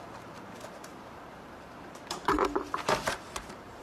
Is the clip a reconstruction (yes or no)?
yes